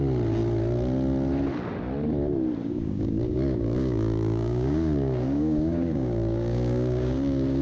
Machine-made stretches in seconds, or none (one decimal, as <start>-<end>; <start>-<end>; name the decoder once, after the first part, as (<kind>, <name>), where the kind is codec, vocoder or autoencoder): 2.6-7.6 (codec, DAC)